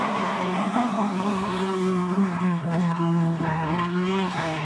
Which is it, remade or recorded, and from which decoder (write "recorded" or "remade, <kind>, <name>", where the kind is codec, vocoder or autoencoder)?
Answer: remade, codec, SNAC